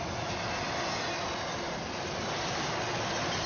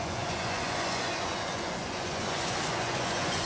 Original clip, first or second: first